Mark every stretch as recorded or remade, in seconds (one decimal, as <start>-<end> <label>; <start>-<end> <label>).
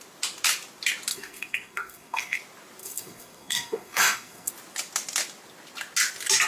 0.0-1.1 recorded; 1.1-2.4 remade; 2.4-2.8 recorded; 2.8-4.5 remade; 4.5-6.5 recorded